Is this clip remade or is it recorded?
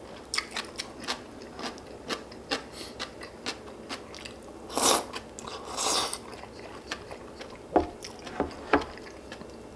recorded